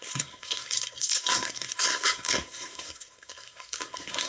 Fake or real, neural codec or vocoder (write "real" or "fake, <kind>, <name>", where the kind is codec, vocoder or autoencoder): fake, codec, SNAC